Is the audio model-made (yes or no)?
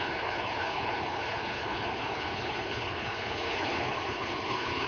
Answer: yes